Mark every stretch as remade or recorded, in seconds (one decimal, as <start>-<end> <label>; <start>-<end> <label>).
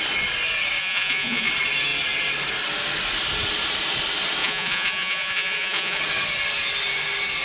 0.0-0.8 recorded; 0.8-1.5 remade; 1.5-4.4 recorded; 4.4-6.0 remade; 6.0-7.4 recorded